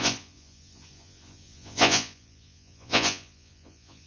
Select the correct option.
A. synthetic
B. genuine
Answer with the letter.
A